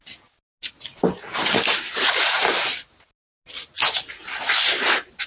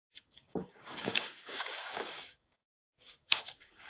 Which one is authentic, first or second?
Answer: first